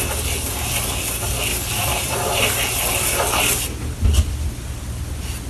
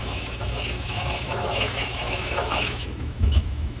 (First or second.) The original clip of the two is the first